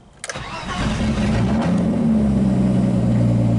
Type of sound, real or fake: real